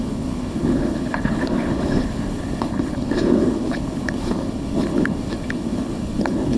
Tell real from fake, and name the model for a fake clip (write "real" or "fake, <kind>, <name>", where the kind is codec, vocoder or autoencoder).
fake, codec, HILCodec